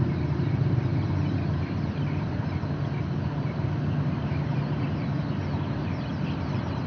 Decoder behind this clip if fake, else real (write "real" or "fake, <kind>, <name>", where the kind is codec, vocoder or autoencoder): real